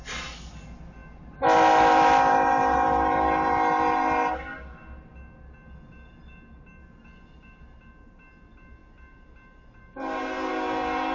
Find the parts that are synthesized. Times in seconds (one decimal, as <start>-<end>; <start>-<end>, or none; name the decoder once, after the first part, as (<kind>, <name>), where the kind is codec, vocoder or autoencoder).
none